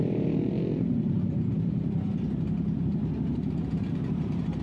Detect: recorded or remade remade